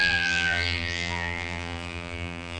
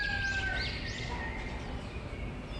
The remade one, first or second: first